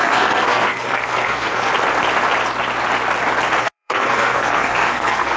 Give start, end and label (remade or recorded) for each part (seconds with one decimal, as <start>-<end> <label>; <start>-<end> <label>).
0.0-1.7 remade; 1.7-3.6 recorded; 3.6-5.4 remade